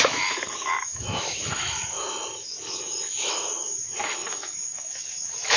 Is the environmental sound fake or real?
fake